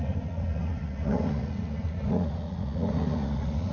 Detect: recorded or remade remade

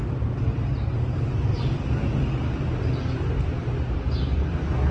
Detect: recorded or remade recorded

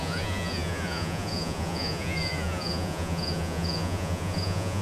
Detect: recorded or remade remade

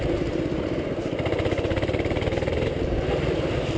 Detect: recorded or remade recorded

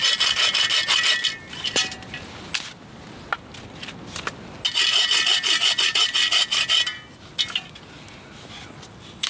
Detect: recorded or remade recorded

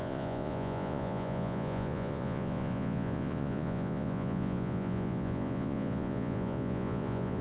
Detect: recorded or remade remade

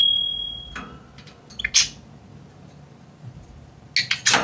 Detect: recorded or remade recorded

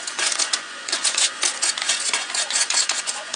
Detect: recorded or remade remade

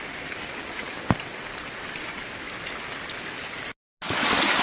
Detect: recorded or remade recorded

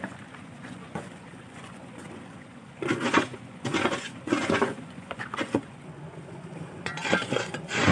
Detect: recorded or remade remade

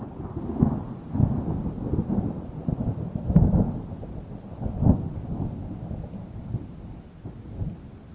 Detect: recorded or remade recorded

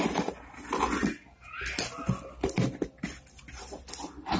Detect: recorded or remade recorded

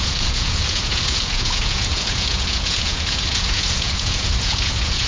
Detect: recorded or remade remade